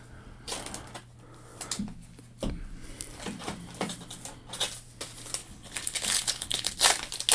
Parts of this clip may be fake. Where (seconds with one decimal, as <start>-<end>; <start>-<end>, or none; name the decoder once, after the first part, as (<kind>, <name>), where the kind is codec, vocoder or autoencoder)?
5.4-6.7 (codec, HILCodec)